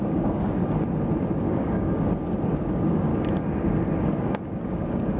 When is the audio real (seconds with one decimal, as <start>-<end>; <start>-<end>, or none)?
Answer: 0.6-1.4; 3.1-4.0